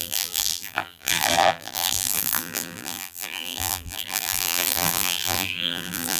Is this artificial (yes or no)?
yes